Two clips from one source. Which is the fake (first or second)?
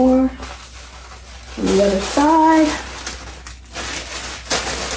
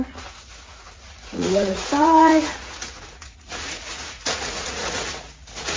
second